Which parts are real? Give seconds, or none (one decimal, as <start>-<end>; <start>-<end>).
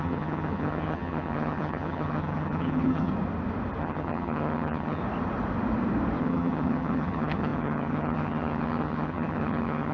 3.1-3.8; 5.0-6.2